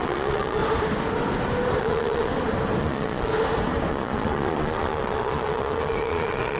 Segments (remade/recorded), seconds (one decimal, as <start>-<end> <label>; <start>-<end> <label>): 0.0-0.6 remade; 0.6-1.8 recorded; 1.8-2.3 remade; 2.3-2.8 recorded; 2.8-3.3 remade; 3.3-3.9 recorded; 3.9-6.6 remade